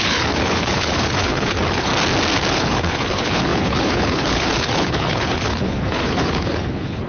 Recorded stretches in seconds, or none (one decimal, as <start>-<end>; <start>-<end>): 1.9-2.5